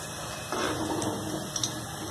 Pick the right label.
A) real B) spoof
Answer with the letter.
A